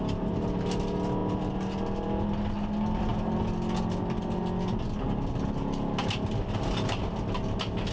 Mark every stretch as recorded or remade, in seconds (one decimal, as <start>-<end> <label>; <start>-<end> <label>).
0.0-7.9 recorded

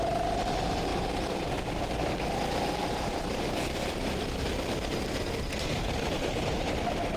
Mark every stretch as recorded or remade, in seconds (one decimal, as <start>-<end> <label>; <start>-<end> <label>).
0.0-0.9 recorded; 0.9-2.0 remade; 2.0-2.8 recorded; 2.8-7.2 remade

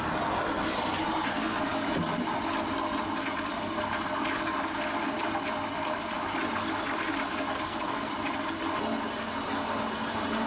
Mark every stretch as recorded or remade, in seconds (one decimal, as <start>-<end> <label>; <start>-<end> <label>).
0.0-7.5 recorded; 7.5-8.1 remade; 8.1-10.5 recorded

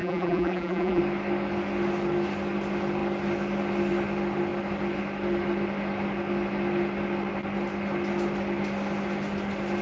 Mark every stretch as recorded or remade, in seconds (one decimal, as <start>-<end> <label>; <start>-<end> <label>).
0.0-1.0 remade; 1.0-9.8 recorded

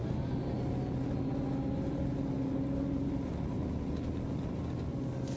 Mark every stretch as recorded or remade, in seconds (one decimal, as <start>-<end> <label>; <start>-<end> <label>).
0.0-5.4 recorded

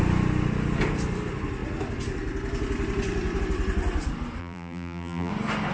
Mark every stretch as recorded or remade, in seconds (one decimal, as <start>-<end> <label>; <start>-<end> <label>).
0.0-4.4 recorded; 4.4-5.3 remade; 5.3-5.7 recorded

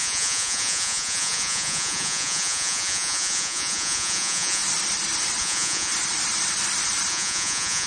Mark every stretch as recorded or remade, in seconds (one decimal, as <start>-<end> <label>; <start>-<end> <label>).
0.0-4.6 remade; 4.6-5.4 recorded; 5.4-5.9 remade; 5.9-7.1 recorded; 7.1-7.9 remade

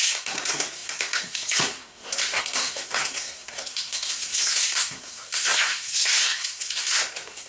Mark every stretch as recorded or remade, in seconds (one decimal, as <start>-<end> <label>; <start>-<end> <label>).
0.0-7.5 remade